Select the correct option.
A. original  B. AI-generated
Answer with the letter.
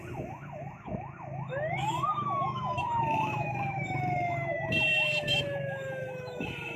B